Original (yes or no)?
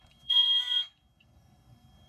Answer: no